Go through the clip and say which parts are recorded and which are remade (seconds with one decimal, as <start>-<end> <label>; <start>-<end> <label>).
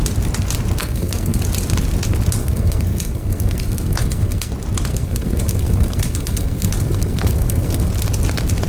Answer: 0.0-0.8 recorded; 0.8-1.4 remade; 1.4-2.4 recorded; 2.4-4.5 remade; 4.5-4.9 recorded; 4.9-7.9 remade; 7.9-8.7 recorded